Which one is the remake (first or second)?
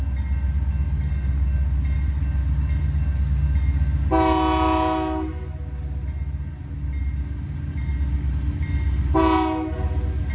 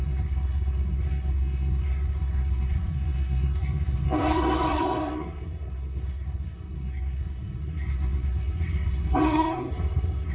second